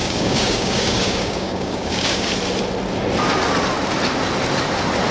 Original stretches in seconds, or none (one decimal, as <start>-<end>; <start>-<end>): 2.3-5.1